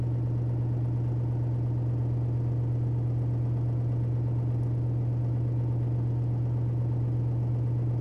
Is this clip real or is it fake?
real